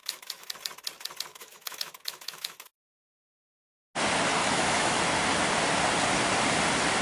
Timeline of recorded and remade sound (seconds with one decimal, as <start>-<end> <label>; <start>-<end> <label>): 0.0-0.5 remade; 0.5-1.3 recorded; 1.3-3.6 remade; 3.6-4.4 recorded; 4.4-5.0 remade; 5.0-7.0 recorded

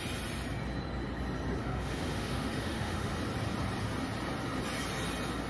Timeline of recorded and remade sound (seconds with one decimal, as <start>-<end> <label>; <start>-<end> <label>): 0.0-1.6 recorded; 1.6-3.1 remade; 3.1-5.5 recorded

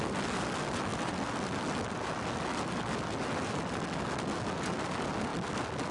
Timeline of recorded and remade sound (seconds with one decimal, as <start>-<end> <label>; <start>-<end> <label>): 0.0-5.9 recorded

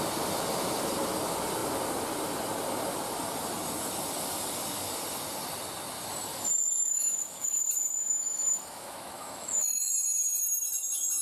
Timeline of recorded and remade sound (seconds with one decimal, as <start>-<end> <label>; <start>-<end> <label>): 0.0-6.8 recorded; 6.8-7.6 remade; 7.6-8.0 recorded; 8.0-9.9 remade; 9.9-11.2 recorded